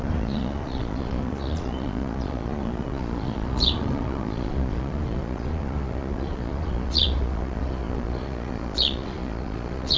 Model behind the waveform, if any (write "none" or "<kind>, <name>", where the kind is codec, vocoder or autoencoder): vocoder, Vocos